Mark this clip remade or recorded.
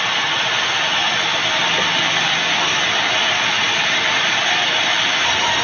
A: recorded